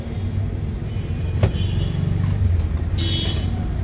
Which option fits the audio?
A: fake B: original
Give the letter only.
B